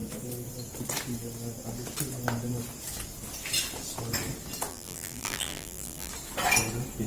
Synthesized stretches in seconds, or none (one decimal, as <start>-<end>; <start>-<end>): 4.7-6.1